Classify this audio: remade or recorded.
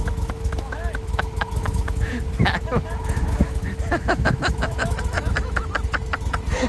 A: remade